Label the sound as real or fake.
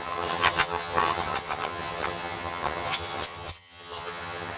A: fake